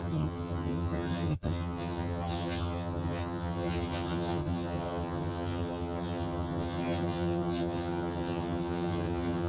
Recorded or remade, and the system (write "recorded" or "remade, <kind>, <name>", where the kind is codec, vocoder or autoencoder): remade, vocoder, HiFi-GAN